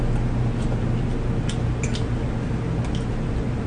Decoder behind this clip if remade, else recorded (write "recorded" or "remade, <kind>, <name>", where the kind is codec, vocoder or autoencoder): recorded